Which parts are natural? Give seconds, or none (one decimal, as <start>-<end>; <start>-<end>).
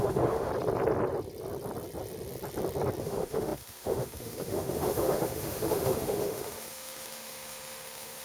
0.5-3.0